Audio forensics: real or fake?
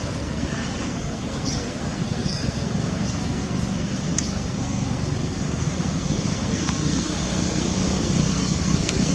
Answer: fake